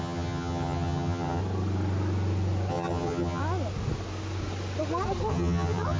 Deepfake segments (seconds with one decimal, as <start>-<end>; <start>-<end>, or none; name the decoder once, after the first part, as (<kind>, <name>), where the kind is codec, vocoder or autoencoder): 0.0-1.4 (vocoder, HiFi-GAN); 2.7-3.4; 5.3-6.0